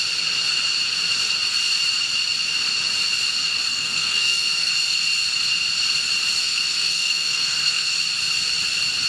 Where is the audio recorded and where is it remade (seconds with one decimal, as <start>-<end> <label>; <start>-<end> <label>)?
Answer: 0.0-3.7 recorded; 3.7-4.7 remade; 4.7-6.4 recorded; 6.4-7.9 remade; 7.9-9.1 recorded